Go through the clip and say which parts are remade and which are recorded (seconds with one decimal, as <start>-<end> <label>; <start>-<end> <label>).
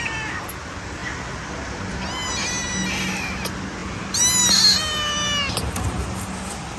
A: 0.0-6.8 recorded